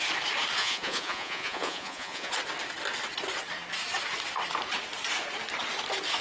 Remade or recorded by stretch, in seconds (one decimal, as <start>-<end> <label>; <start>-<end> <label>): 0.0-0.6 recorded; 0.6-2.3 remade; 2.3-6.2 recorded